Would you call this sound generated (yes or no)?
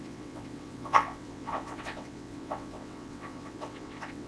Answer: yes